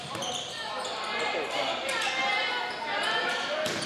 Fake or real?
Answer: real